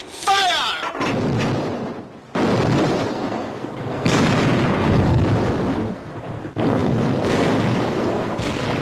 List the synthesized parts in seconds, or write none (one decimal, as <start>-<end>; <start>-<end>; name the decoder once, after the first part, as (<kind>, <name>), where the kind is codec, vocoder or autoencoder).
0.0-0.4 (codec, SNAC); 3.1-5.2; 5.9-8.8